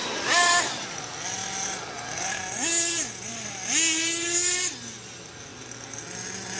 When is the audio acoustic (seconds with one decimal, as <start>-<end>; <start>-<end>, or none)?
0.0-6.6